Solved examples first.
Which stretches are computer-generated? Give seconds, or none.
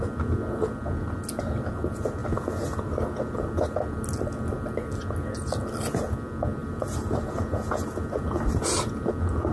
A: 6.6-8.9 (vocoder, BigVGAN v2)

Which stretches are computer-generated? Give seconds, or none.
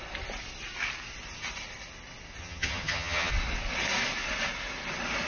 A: 2.4-3.3 (vocoder, HiFi-GAN)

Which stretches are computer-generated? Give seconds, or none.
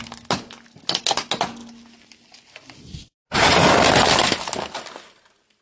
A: none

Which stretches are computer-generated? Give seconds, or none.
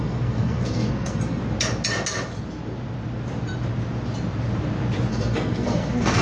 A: 0.0-1.4 (codec, SNAC); 5.1-6.2